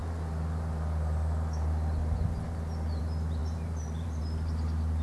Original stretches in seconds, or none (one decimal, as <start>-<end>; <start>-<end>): 0.0-3.4; 4.2-5.0